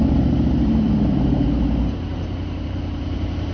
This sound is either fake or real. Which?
fake